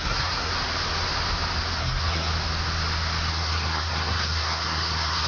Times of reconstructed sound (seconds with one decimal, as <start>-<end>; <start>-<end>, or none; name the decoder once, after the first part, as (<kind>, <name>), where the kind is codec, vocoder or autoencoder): 0.0-0.5 (codec, SNAC); 1.8-2.3; 3.3-5.3